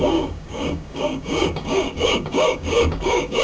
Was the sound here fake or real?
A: fake